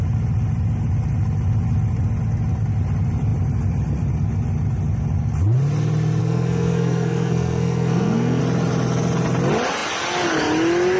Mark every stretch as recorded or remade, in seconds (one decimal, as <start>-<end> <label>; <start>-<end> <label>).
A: 0.0-6.2 recorded; 6.2-8.4 remade; 8.4-11.0 recorded